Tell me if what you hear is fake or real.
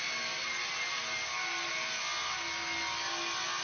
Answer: real